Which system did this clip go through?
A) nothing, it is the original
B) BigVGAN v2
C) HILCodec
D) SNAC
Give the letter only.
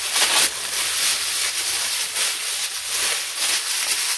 A